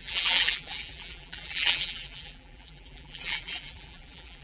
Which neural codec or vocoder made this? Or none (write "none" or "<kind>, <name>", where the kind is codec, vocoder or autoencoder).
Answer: vocoder, BigVGAN v2